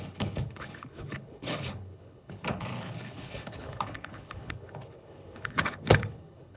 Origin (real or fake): fake